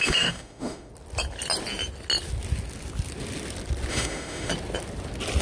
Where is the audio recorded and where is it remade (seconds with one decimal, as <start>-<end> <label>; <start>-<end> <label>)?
0.0-0.9 remade; 0.9-3.9 recorded; 3.9-4.5 remade; 4.5-5.4 recorded